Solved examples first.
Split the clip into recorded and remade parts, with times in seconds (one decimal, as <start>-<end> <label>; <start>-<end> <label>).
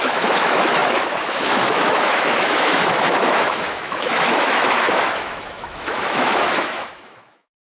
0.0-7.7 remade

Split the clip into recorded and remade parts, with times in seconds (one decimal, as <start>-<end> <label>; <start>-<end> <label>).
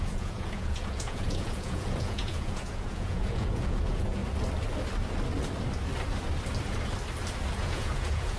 0.0-4.2 remade; 4.2-7.5 recorded; 7.5-8.4 remade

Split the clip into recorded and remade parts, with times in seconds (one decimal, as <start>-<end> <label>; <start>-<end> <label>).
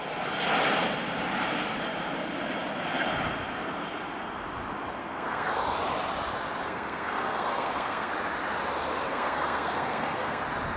0.0-5.0 recorded; 5.0-5.6 remade; 5.6-6.6 recorded; 6.6-8.1 remade; 8.1-9.1 recorded; 9.1-10.4 remade; 10.4-10.8 recorded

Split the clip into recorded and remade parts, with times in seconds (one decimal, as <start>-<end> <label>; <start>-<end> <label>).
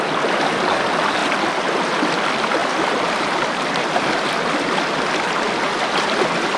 0.0-6.6 recorded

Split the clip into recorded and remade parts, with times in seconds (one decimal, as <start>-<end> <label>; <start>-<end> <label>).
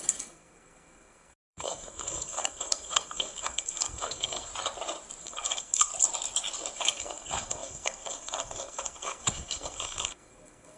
0.0-4.5 remade; 4.5-5.2 recorded; 5.2-5.9 remade; 5.9-6.8 recorded; 6.8-10.8 remade